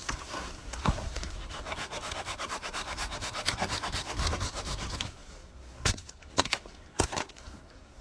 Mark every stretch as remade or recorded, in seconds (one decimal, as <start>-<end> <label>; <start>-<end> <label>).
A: 0.0-8.0 remade